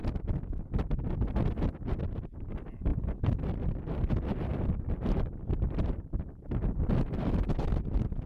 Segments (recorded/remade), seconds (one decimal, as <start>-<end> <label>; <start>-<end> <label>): 0.0-2.9 recorded; 2.9-4.1 remade; 4.1-4.5 recorded; 4.5-7.6 remade; 7.6-8.3 recorded